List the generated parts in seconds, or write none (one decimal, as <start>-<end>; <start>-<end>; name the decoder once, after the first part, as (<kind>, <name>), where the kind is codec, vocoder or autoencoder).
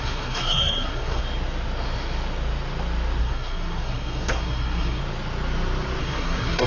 0.0-1.2 (codec, SNAC); 3.2-5.0; 6.0-6.7